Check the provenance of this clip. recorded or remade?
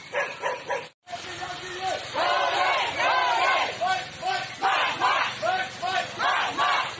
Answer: recorded